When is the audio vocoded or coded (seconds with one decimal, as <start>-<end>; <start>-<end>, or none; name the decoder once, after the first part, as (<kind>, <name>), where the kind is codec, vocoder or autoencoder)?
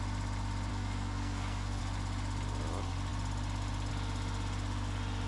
0.7-1.8 (codec, SNAC)